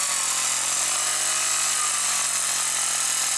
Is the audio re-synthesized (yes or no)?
no